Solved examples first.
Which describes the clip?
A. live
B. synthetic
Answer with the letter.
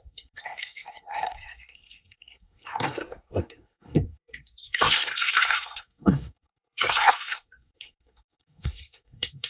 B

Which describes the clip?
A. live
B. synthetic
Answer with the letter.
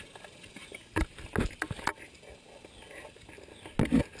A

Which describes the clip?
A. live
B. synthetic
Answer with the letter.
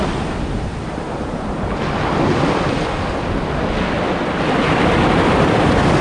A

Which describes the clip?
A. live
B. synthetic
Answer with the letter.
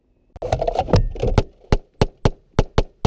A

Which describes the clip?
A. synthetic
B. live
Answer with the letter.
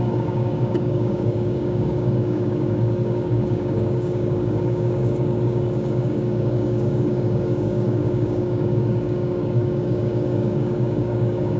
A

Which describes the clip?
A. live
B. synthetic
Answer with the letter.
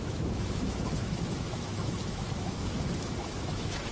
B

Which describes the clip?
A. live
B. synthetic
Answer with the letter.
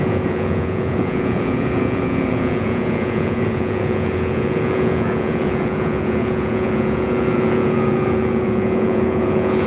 B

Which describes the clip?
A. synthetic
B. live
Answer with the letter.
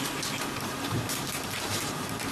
A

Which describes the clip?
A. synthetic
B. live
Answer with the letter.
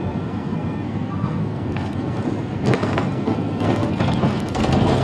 A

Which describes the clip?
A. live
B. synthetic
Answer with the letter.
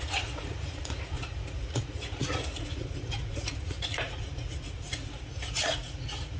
B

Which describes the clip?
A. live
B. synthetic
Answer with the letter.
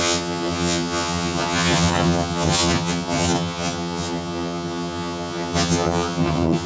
B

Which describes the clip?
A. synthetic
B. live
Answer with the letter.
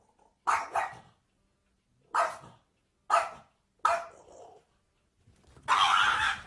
B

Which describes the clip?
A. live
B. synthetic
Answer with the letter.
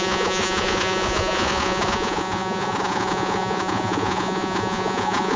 B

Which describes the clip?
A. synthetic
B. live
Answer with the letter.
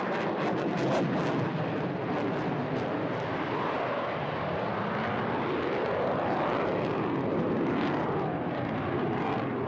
B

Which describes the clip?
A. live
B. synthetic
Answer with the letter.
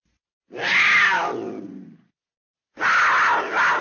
A